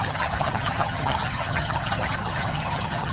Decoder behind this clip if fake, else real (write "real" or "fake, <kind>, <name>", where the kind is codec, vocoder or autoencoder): fake, vocoder, HiFi-GAN